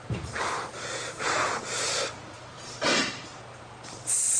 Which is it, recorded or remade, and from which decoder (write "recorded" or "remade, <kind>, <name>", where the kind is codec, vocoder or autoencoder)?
remade, vocoder, BigVGAN v2